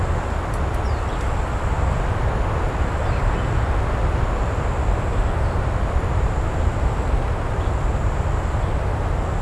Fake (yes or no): no